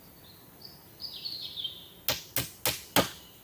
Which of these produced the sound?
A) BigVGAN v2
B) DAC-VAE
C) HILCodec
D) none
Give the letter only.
D